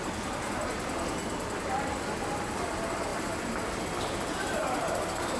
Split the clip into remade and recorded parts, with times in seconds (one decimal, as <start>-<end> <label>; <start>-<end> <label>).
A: 0.0-5.4 recorded